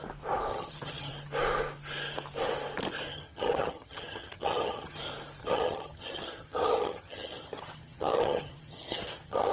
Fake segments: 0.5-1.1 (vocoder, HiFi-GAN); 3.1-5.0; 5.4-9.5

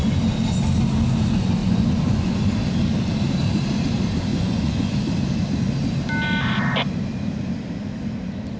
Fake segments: 1.6-2.3 (vocoder, Vocos); 4.3-4.9

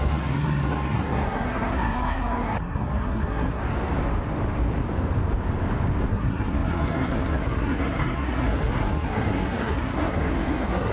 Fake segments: 0.0-3.6 (codec, SNAC); 6.1-10.9

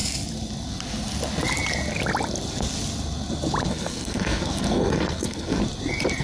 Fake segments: 3.7-5.6 (codec, SNAC)

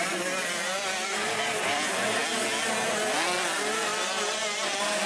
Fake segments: none

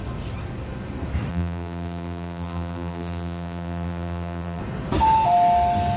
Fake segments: 1.3-4.6 (vocoder, BigVGAN v2)